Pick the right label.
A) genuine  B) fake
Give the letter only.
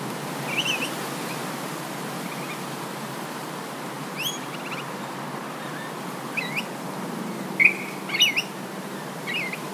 A